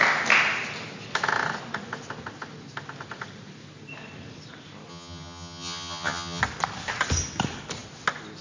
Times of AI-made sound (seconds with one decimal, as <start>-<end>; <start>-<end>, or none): 4.9-6.4